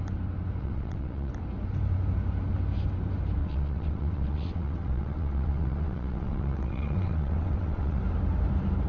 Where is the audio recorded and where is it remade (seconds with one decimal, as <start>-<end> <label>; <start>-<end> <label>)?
0.0-0.6 recorded; 0.6-1.3 remade; 1.3-3.4 recorded; 3.4-8.0 remade; 8.0-8.9 recorded